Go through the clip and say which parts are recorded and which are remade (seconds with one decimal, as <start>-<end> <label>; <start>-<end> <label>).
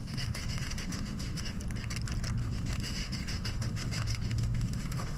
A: 0.0-1.6 remade; 1.6-2.4 recorded; 2.4-5.2 remade